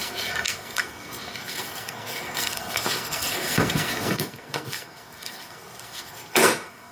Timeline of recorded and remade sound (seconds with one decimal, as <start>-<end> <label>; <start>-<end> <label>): 0.0-6.9 remade